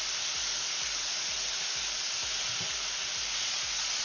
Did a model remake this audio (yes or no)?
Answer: no